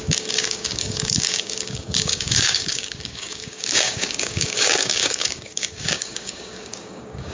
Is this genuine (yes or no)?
no